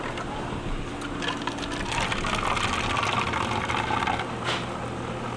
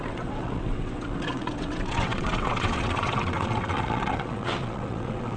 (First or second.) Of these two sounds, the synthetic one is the second